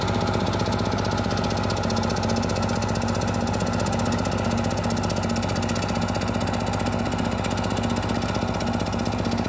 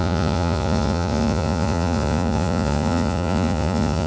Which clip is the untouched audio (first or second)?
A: first